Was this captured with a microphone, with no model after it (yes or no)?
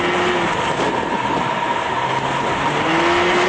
yes